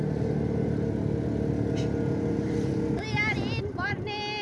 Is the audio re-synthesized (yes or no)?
no